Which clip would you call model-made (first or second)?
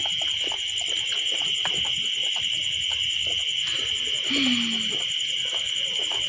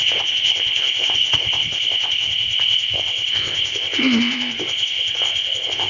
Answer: second